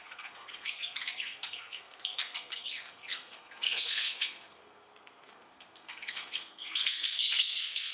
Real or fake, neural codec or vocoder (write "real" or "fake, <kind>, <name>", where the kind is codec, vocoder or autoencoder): fake, codec, SNAC